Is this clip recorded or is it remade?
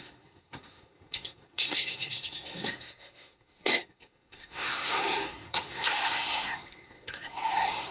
remade